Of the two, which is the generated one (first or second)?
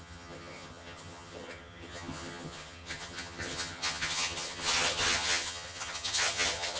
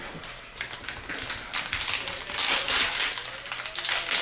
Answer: first